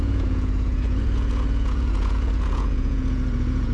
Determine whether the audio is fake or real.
fake